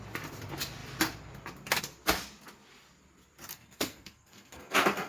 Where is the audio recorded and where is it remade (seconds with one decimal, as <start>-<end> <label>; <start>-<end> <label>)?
0.0-3.5 recorded; 3.5-5.1 remade